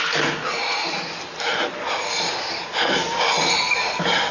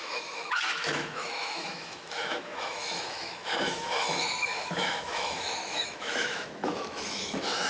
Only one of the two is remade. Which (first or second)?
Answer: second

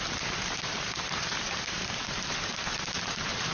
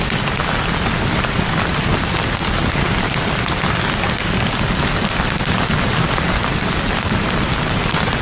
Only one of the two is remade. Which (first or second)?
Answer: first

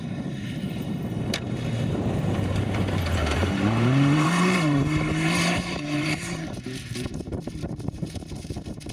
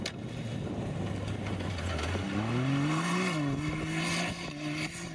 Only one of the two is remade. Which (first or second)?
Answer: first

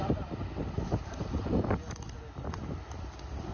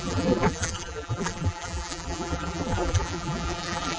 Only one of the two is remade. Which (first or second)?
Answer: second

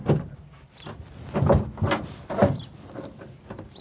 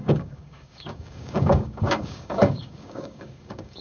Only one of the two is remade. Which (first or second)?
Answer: second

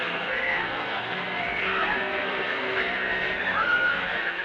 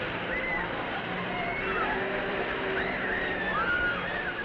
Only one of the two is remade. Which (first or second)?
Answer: first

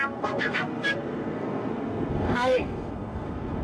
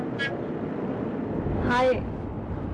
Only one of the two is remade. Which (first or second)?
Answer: first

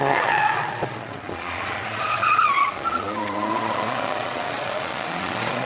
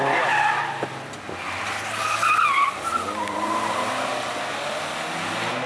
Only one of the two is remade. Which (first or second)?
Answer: first